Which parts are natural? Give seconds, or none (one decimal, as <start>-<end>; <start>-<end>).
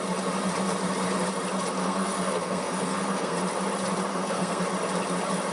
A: 0.0-1.8; 3.4-4.1; 4.6-5.5